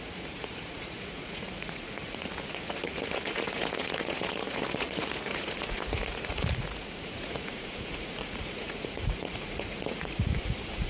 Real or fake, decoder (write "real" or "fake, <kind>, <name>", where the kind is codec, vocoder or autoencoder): fake, vocoder, Vocos